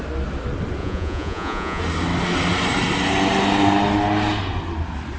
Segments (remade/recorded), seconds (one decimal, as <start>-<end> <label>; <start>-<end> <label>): 0.0-0.8 recorded; 0.8-1.8 remade; 1.8-5.2 recorded